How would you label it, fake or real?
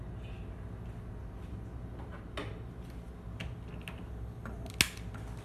real